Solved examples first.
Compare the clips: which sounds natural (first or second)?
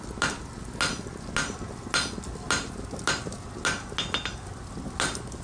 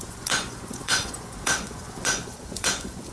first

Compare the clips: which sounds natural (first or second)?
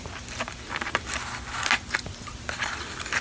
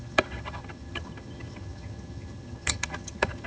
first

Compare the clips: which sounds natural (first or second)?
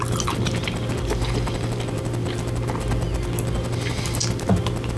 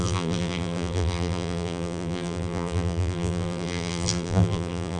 first